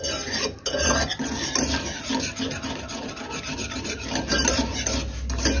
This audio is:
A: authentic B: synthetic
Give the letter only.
A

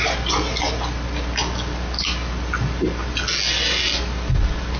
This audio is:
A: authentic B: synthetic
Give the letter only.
A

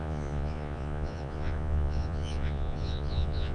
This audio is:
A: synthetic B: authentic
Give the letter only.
A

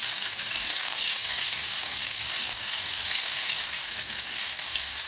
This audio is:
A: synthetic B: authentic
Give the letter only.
A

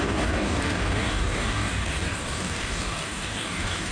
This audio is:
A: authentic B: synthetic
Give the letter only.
B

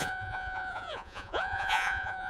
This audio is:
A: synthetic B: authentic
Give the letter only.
A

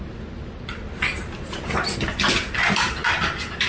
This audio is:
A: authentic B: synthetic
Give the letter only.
A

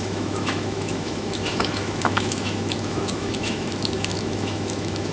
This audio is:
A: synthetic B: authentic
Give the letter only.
A